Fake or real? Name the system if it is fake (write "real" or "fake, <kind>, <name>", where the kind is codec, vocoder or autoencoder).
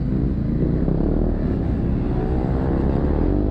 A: real